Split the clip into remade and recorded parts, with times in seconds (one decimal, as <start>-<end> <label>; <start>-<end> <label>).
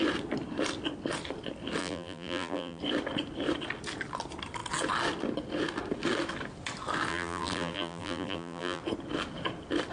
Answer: 0.0-1.8 recorded; 1.8-2.8 remade; 2.8-7.1 recorded; 7.1-8.8 remade; 8.8-9.9 recorded